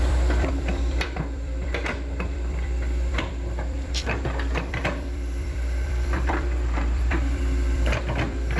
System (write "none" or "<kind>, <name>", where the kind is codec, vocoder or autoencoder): vocoder, BigVGAN v2